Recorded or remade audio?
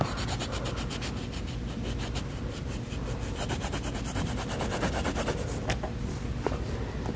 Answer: recorded